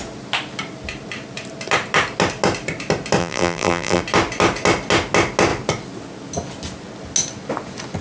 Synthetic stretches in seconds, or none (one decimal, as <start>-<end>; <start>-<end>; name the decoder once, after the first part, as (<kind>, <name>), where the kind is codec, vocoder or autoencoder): 3.2-4.0 (vocoder, BigVGAN v2)